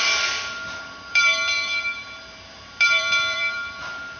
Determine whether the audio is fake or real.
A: fake